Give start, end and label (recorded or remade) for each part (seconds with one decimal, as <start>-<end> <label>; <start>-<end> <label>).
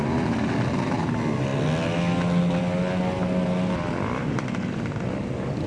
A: 0.0-5.7 recorded